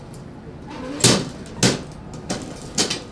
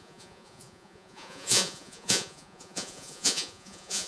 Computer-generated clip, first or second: second